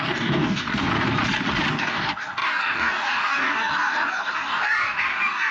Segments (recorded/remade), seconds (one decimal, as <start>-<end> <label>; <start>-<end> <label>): 0.0-0.9 remade; 0.9-1.7 recorded; 1.7-5.5 remade